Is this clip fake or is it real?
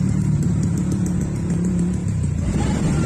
fake